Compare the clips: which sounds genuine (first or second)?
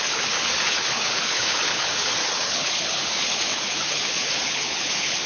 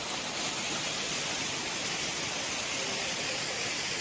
second